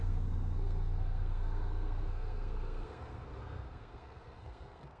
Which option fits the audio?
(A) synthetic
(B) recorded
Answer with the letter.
A